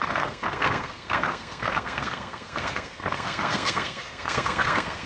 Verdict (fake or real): fake